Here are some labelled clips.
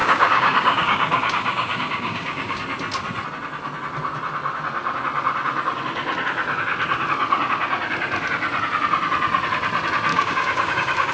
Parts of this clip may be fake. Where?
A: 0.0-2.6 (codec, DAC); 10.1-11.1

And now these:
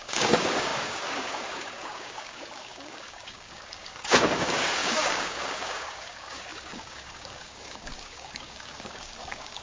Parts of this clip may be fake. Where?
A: 0.0-9.6 (codec, DAC)

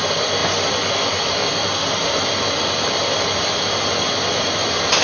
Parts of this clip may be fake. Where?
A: none

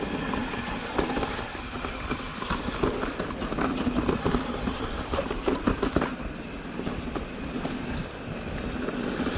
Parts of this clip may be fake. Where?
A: none

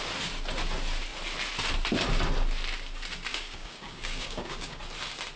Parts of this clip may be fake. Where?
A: 3.3-4.8 (codec, DAC)

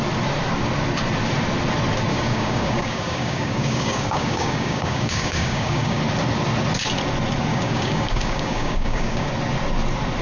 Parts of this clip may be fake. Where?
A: 2.1-6.0 (codec, DAC); 7.5-9.3

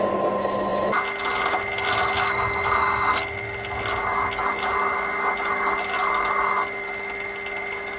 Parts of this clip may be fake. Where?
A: none

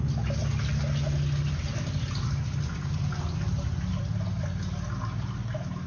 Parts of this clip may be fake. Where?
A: none